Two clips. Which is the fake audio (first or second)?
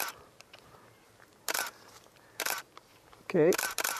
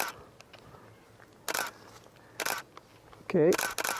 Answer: first